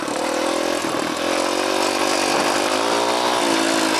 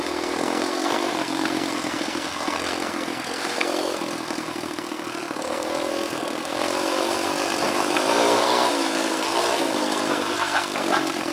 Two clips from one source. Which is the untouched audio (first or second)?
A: first